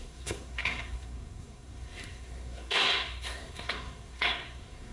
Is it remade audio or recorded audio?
remade